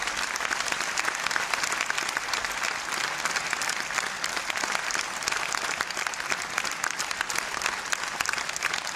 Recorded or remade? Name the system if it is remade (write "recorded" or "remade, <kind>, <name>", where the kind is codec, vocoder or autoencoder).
recorded